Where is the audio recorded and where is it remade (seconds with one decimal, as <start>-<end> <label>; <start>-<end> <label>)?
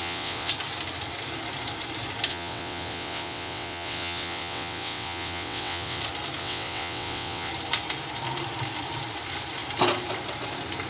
0.0-0.5 remade; 0.5-2.3 recorded; 2.3-6.0 remade; 6.0-6.4 recorded; 6.4-7.5 remade; 7.5-10.9 recorded